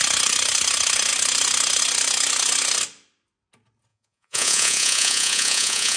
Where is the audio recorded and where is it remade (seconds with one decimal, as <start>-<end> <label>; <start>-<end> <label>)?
0.0-3.9 recorded; 3.9-6.0 remade